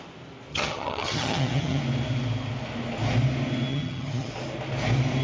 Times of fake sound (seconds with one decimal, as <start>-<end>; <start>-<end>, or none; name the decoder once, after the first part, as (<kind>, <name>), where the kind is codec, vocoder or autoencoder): 0.5-1.8 (vocoder, HiFi-GAN); 3.7-4.3